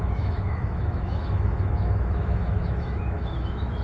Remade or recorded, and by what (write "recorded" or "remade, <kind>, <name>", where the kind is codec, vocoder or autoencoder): remade, autoencoder, DAC-VAE